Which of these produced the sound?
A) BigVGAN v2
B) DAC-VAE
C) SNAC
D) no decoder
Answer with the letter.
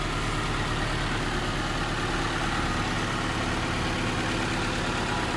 D